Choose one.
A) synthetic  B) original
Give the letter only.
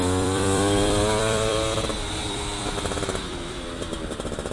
A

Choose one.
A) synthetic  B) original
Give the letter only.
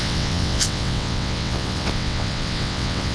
A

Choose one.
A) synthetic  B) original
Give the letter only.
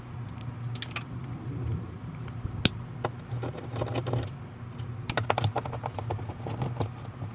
B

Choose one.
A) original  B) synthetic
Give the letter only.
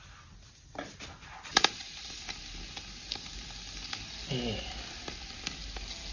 A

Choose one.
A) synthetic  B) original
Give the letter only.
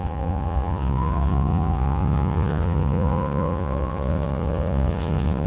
A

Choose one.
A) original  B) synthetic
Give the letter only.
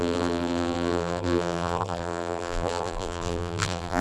B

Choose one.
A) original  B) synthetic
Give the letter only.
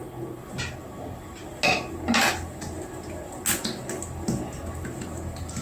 A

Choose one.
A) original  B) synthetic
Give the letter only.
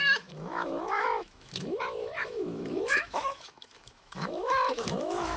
B